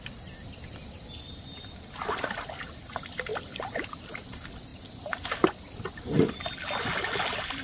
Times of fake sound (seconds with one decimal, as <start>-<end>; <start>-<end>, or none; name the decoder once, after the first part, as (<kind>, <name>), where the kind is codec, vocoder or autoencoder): none